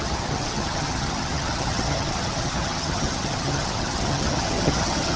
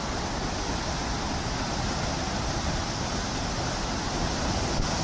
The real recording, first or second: second